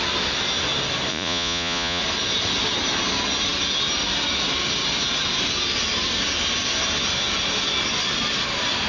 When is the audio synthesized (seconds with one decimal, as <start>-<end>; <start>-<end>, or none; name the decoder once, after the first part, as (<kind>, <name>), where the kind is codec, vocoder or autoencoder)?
1.1-2.0 (vocoder, Vocos)